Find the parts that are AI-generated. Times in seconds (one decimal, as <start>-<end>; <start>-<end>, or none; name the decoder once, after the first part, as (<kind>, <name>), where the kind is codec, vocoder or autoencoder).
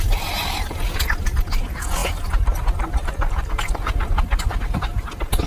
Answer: none